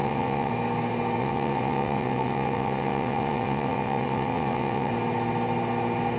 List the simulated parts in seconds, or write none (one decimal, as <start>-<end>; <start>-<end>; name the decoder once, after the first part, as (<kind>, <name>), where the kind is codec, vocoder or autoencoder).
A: 0.0-0.5 (vocoder, WaveNeXt); 1.2-4.9